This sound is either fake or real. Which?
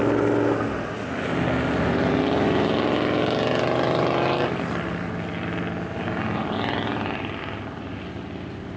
real